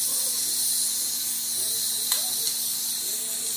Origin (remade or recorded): recorded